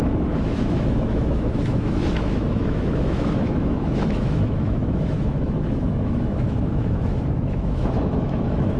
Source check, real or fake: fake